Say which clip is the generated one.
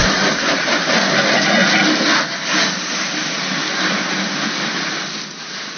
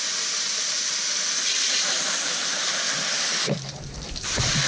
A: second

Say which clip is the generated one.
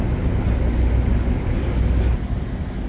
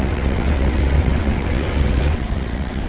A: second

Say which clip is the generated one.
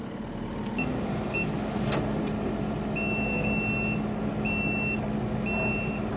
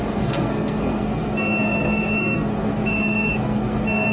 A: second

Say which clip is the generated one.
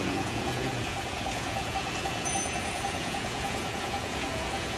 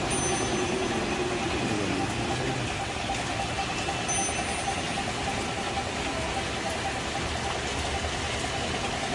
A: first